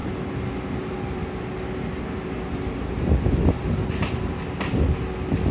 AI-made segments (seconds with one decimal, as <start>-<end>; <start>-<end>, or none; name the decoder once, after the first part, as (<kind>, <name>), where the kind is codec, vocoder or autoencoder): none